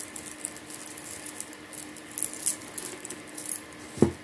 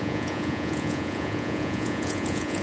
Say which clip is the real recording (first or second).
first